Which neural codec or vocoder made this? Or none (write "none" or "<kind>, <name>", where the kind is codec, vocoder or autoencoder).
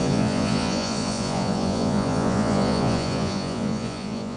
vocoder, Vocos